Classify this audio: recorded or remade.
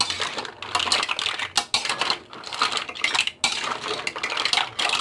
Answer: recorded